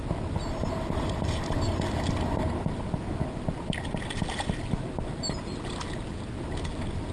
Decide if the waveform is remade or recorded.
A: recorded